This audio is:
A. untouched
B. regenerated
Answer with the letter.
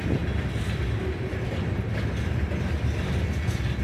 A